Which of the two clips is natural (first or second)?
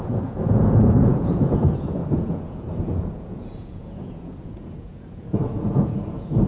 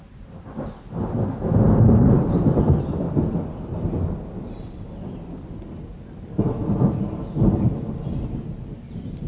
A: second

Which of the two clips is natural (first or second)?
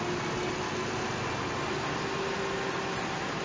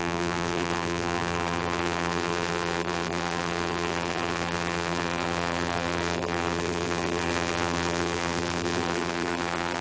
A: first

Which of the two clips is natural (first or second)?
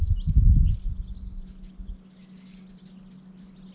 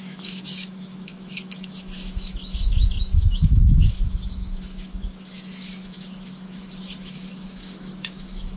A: first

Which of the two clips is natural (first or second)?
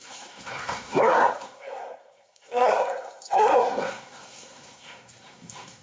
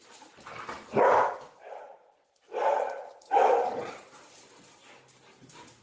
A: second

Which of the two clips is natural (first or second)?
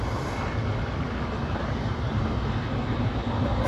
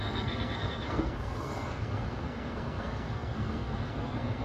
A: first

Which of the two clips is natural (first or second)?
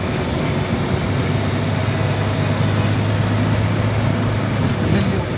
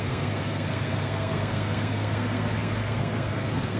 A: first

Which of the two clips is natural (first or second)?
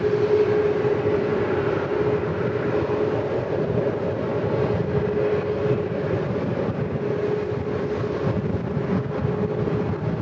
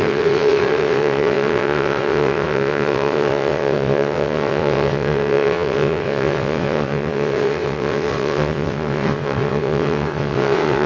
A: first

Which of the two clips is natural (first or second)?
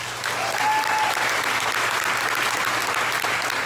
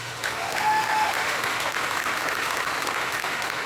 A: first